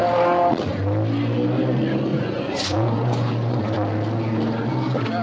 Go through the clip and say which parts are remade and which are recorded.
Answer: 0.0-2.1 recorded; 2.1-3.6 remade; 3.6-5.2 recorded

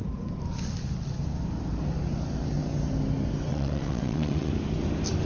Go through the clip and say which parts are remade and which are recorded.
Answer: 0.0-3.5 recorded; 3.5-4.5 remade; 4.5-5.3 recorded

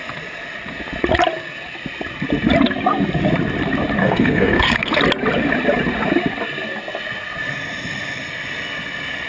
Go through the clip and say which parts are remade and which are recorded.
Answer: 0.0-4.0 recorded; 4.0-5.0 remade; 5.0-9.3 recorded

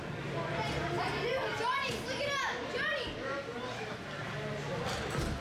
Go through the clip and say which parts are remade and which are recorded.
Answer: 0.0-5.4 recorded

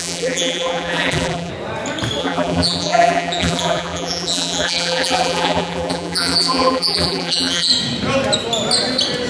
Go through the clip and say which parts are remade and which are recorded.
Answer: 0.0-1.5 remade; 1.5-2.2 recorded; 2.2-7.7 remade; 7.7-9.3 recorded

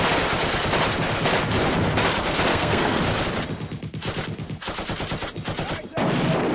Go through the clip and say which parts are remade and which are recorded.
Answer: 0.0-2.5 recorded; 2.5-3.0 remade; 3.0-6.5 recorded

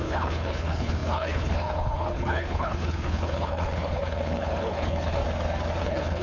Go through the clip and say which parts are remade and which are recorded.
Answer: 0.0-5.2 remade; 5.2-5.8 recorded; 5.8-6.2 remade